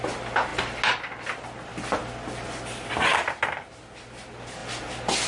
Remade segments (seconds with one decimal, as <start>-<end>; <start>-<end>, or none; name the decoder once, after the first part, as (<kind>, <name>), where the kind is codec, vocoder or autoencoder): none